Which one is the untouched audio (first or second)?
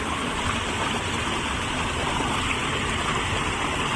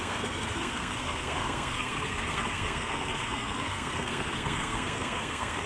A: first